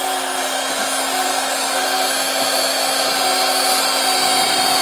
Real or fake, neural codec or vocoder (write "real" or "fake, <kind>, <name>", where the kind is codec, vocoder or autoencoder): real